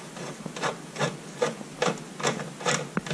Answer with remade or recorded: recorded